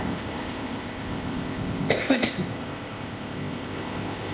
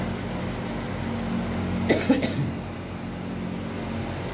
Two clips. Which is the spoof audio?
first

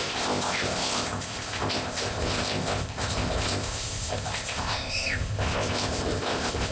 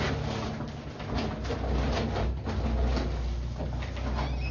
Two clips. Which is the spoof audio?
first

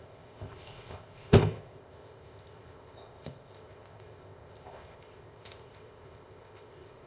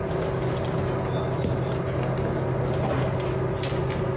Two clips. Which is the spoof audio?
first